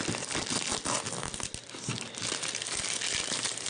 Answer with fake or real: real